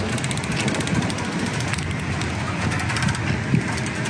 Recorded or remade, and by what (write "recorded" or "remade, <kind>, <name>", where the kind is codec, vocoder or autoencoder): recorded